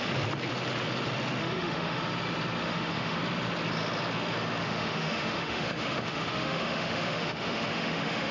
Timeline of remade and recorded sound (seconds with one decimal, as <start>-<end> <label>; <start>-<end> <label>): 0.0-1.4 recorded; 1.4-2.0 remade; 2.0-2.6 recorded; 2.6-3.2 remade; 3.2-4.6 recorded; 4.6-8.3 remade